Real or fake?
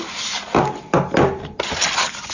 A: real